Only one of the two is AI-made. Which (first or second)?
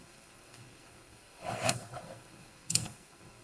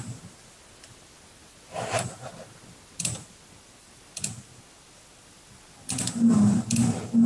first